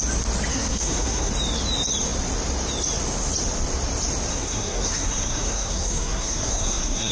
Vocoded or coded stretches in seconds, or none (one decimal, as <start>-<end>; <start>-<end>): 0.5-1.3; 4.3-7.1